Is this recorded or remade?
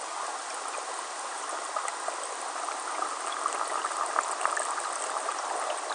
recorded